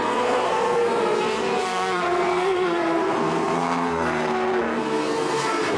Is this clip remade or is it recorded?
remade